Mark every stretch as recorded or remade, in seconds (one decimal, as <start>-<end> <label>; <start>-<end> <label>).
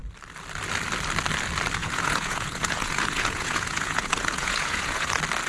0.0-1.8 recorded; 1.8-5.1 remade; 5.1-5.5 recorded